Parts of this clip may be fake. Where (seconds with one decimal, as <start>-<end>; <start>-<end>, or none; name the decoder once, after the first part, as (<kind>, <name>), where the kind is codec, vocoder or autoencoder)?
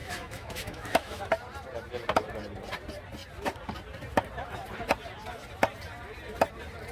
0.0-1.3 (autoencoder, DAC-VAE)